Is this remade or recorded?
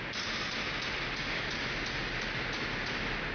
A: recorded